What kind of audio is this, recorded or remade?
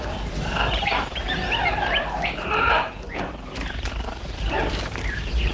remade